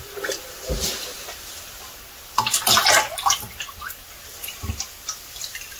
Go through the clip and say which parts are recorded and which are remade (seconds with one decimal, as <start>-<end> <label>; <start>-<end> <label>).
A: 0.0-5.8 recorded